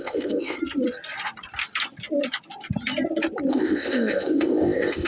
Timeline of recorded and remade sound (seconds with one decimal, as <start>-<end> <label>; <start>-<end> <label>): 0.0-0.6 remade; 0.6-3.5 recorded; 3.5-5.1 remade